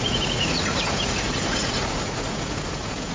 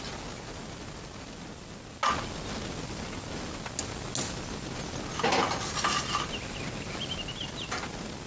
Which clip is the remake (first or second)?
first